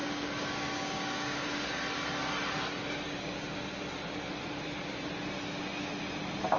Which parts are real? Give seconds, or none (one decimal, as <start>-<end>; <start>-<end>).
1.8-6.6